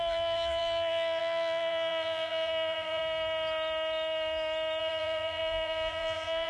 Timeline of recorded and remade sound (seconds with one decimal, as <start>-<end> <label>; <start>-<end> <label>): 0.0-3.0 remade; 3.0-4.8 recorded; 4.8-6.5 remade